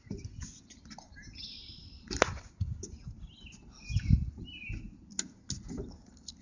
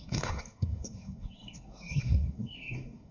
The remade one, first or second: second